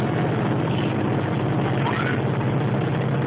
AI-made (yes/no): no